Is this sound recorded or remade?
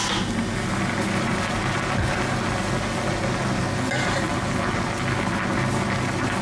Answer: recorded